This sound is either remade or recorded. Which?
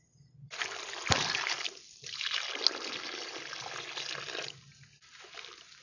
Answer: recorded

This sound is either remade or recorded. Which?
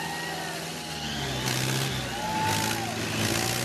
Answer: recorded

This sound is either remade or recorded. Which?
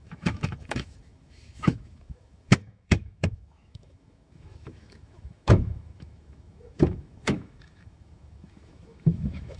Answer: remade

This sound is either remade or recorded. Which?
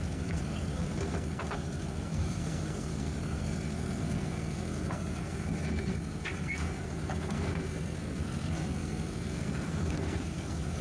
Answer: remade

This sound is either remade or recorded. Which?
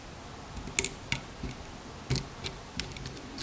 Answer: recorded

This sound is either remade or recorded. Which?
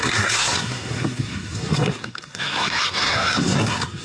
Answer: remade